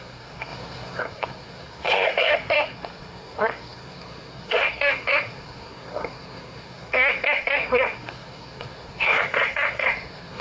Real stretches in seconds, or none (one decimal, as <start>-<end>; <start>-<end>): none

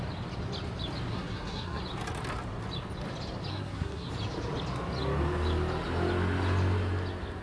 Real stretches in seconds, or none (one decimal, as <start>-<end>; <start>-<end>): 0.0-1.1; 1.8-3.5; 4.1-7.4

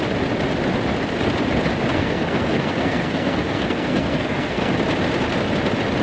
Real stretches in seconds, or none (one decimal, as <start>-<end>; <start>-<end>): 0.0-1.9; 4.7-6.0

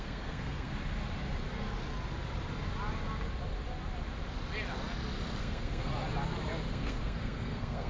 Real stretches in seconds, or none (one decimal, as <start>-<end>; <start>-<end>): 0.7-5.4; 5.9-6.7

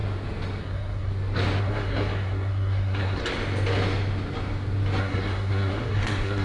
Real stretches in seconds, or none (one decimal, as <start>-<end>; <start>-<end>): 0.0-0.6; 1.1-1.6; 3.2-5.0

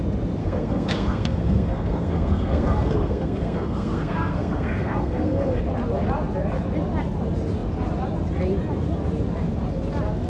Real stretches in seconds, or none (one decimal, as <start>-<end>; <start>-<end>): 0.0-0.4; 5.6-10.3